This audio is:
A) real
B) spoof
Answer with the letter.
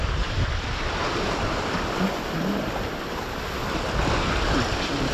A